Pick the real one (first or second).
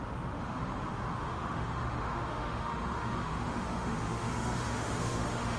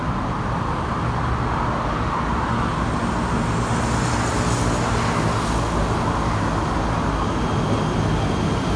second